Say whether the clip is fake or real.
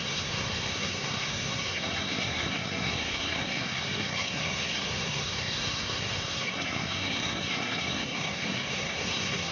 fake